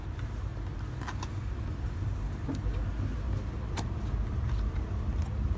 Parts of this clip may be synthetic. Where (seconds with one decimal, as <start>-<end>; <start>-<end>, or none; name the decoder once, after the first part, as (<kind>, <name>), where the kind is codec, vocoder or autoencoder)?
none